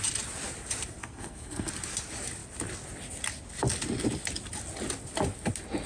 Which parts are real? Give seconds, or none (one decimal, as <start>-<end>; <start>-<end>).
0.0-1.0; 1.7-5.9